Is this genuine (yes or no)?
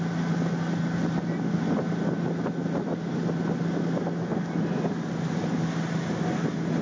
yes